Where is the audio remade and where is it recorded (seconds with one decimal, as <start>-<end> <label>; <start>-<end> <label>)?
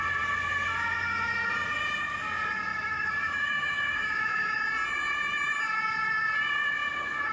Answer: 0.0-2.7 recorded; 2.7-4.6 remade; 4.6-7.3 recorded